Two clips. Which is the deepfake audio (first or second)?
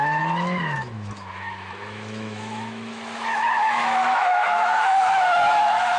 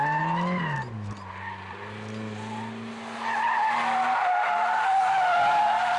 first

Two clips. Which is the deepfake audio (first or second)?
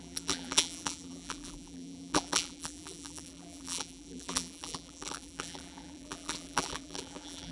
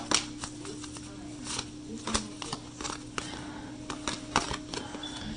first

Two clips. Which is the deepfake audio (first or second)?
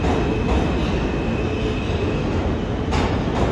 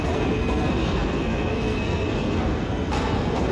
second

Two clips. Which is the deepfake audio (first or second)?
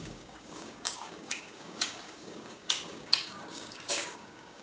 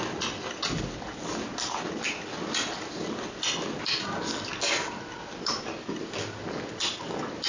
first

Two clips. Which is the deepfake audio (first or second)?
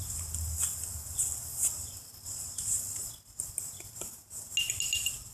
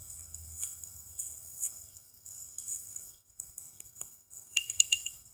second